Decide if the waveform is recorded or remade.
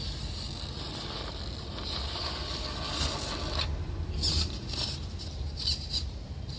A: recorded